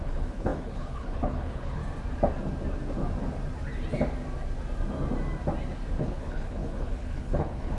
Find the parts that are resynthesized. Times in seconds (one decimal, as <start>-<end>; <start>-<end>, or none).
0.0-1.8; 6.0-7.8